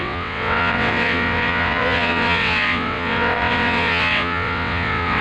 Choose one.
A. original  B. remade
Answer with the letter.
B